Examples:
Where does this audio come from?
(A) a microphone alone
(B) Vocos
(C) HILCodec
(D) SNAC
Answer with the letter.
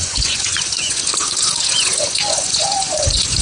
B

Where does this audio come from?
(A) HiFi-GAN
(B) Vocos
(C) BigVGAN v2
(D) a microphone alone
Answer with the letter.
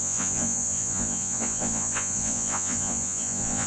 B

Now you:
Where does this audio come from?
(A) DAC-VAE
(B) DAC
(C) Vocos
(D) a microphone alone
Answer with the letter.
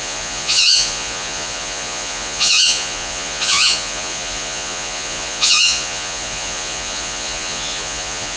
C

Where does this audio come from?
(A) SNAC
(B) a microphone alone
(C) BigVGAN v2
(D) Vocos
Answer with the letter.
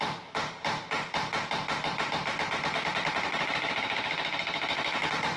B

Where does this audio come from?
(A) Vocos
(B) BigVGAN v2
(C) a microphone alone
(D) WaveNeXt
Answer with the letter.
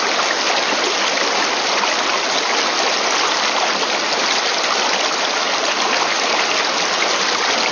C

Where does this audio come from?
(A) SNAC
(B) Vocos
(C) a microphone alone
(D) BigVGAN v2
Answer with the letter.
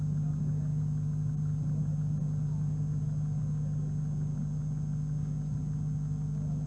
C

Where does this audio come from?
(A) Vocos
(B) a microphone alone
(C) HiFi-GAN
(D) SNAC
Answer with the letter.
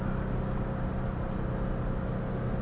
B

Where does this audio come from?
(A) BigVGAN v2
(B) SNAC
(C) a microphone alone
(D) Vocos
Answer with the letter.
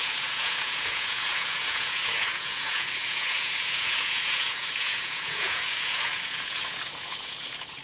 D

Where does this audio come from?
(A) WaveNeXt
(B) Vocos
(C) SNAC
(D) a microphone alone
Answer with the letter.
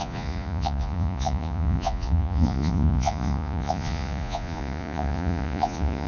B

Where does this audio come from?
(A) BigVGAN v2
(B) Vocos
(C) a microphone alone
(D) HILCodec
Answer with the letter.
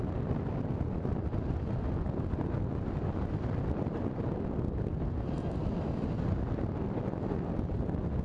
C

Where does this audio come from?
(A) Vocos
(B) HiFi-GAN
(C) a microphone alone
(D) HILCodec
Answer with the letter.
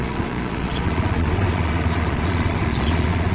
A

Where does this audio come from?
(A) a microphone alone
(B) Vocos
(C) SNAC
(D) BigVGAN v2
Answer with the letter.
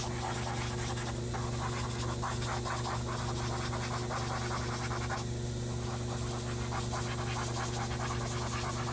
A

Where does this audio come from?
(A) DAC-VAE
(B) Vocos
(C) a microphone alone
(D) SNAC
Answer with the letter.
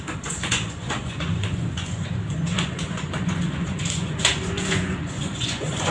B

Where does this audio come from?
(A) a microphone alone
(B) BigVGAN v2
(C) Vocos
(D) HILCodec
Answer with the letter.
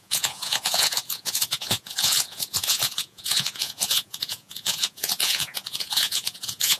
C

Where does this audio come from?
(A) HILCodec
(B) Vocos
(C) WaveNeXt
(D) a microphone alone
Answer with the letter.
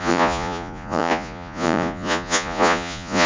B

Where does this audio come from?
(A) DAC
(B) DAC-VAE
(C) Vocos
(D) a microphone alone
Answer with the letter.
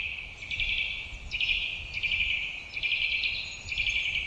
D